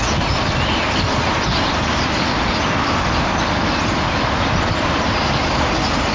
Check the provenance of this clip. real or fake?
real